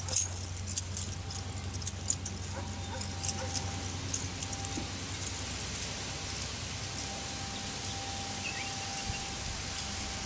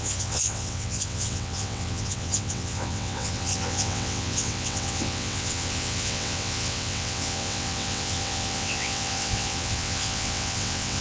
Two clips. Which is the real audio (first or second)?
first